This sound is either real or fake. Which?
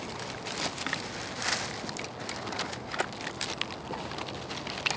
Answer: real